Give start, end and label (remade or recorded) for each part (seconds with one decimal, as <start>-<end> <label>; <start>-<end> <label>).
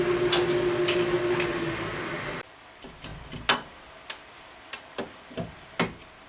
0.0-6.3 recorded